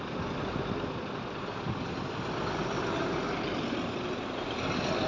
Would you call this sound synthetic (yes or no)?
no